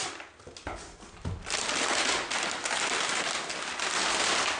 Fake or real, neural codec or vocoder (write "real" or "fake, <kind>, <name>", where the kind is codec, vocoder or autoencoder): real